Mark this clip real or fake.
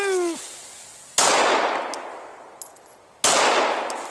real